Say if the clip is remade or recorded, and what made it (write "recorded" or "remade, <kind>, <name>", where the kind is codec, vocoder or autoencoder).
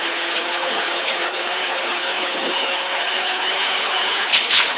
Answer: remade, codec, HILCodec